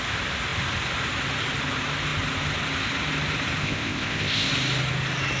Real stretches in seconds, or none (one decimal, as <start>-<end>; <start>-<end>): 0.0-3.6; 4.5-5.4